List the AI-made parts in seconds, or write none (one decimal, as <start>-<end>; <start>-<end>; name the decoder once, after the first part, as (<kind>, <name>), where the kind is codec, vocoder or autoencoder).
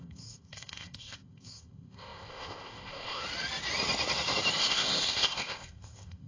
0.0-3.2 (codec, ZipCodec); 4.6-6.3